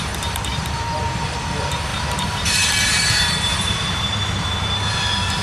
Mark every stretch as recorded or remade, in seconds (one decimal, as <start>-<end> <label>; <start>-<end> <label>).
0.0-0.5 recorded; 0.5-1.1 remade; 1.1-1.9 recorded; 1.9-4.1 remade; 4.1-5.4 recorded